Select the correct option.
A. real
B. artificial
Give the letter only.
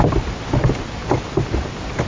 A